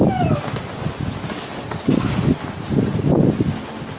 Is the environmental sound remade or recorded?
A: recorded